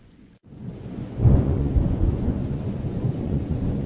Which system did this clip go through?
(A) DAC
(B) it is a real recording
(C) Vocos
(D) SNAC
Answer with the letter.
C